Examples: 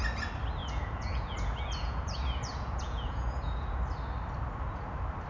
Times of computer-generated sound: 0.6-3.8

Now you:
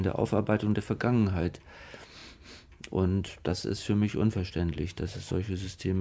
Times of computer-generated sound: 0.0-6.0

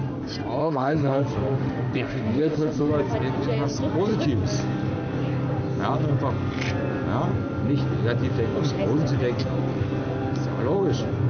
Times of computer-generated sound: 0.6-2.9

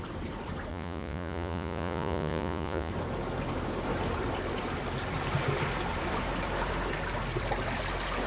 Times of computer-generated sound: 0.7-2.9

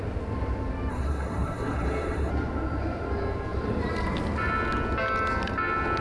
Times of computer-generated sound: 0.9-2.3

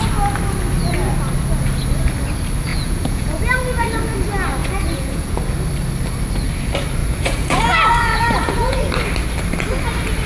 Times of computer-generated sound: 2.7-3.4; 4.6-5.4; 7.0-8.8